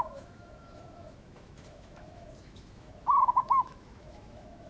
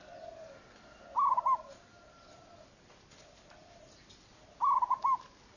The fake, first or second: first